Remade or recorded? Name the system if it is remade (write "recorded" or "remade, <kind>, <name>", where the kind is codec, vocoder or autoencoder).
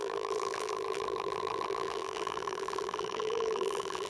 remade, vocoder, BigVGAN v2